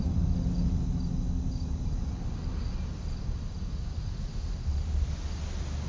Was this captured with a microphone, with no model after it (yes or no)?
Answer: yes